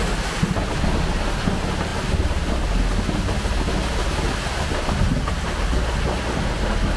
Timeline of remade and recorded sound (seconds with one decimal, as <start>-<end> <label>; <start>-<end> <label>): 0.0-7.0 recorded